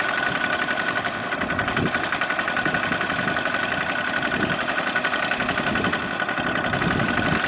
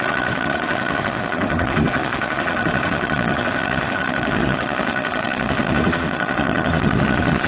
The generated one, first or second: second